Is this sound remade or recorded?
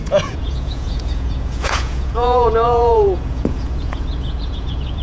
remade